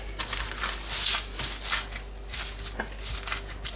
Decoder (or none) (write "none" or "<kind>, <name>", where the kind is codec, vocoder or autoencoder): none